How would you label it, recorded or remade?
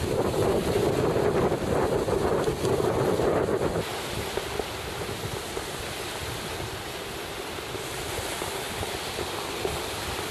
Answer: recorded